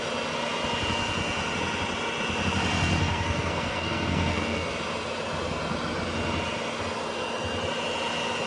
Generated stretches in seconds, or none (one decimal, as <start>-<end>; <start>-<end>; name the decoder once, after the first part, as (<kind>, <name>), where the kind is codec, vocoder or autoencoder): 3.0-4.7 (codec, SNAC)